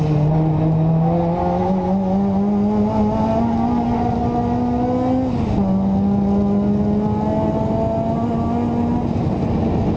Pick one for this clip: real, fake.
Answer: real